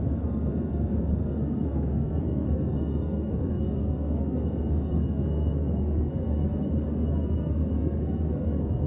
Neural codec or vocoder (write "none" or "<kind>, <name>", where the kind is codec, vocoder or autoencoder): codec, SNAC